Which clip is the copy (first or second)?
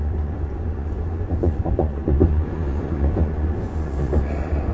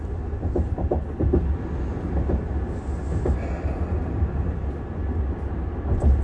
first